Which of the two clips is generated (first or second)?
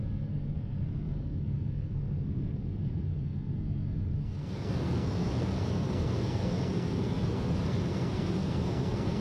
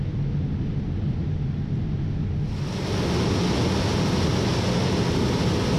first